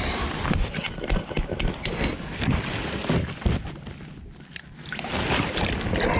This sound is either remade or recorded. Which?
recorded